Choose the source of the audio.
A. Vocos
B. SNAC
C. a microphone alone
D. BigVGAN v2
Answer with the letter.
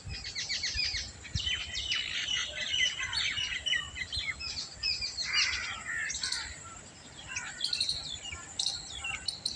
C